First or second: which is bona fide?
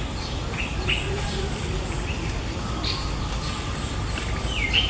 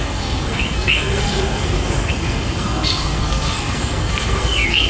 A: first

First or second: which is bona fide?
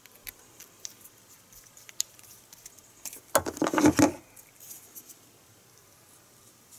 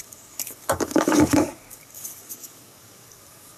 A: first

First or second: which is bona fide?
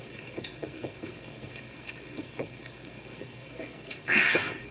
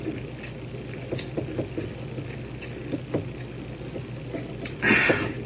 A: second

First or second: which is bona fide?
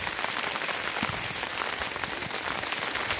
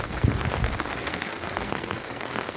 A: first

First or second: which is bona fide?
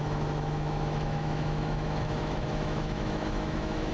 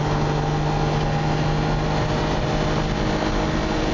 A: second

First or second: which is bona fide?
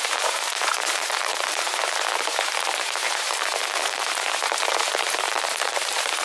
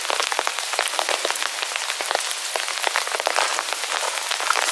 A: second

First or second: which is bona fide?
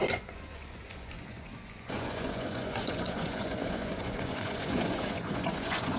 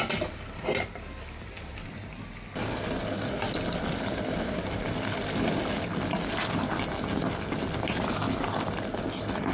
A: second